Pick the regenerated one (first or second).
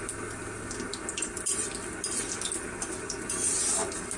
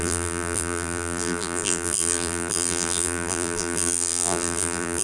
second